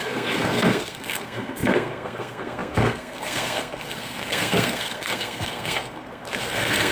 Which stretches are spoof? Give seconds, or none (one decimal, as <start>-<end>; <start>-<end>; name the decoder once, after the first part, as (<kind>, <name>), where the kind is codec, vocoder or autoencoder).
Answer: 0.0-6.9 (codec, SNAC)